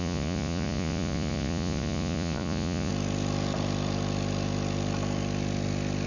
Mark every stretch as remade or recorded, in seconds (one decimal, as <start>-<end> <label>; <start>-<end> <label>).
0.0-2.9 remade; 2.9-6.1 recorded